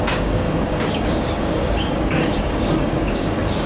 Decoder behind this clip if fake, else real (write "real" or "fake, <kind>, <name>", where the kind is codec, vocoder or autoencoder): fake, codec, DAC